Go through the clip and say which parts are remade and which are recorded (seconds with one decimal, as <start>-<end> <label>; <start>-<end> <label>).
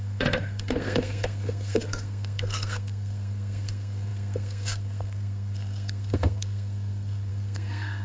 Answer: 0.0-8.0 remade